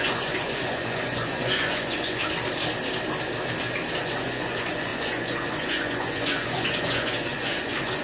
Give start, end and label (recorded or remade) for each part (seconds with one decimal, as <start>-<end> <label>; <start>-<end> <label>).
0.0-2.2 remade; 2.2-4.0 recorded; 4.0-8.0 remade